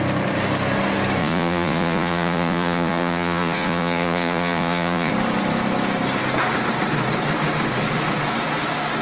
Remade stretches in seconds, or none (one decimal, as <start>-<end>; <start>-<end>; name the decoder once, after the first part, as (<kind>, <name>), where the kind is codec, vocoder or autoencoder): 1.2-5.1 (vocoder, Vocos)